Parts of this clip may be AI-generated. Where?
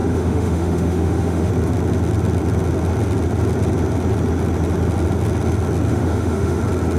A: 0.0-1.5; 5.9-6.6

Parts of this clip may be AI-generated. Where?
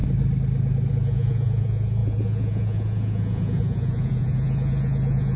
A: 0.9-5.4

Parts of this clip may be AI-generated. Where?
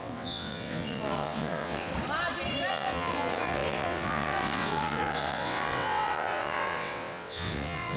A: 0.0-1.9; 2.7-8.0